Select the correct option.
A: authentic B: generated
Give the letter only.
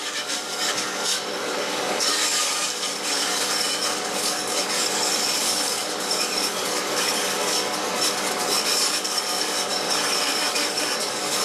B